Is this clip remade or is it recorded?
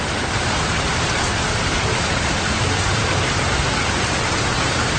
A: remade